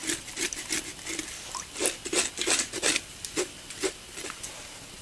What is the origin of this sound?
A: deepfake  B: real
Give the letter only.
B